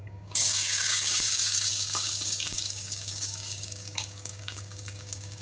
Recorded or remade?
remade